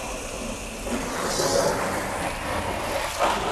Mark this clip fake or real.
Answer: real